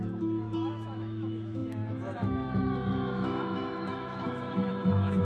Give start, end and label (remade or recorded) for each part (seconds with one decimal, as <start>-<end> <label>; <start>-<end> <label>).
0.0-5.2 remade